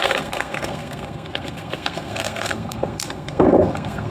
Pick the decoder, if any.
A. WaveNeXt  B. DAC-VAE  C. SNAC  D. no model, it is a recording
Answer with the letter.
C